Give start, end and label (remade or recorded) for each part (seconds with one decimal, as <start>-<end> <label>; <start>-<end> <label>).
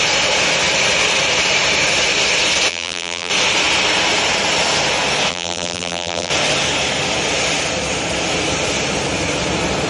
0.0-2.7 recorded; 2.7-3.3 remade; 3.3-5.3 recorded; 5.3-6.3 remade; 6.3-9.9 recorded